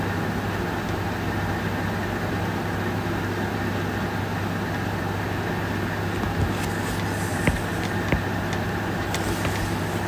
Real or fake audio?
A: real